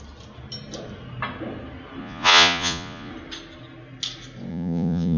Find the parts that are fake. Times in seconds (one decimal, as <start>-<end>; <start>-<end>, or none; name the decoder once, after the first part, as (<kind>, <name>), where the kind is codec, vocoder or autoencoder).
2.0-3.1 (vocoder, Vocos); 4.5-5.2